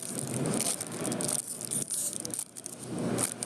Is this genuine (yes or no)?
yes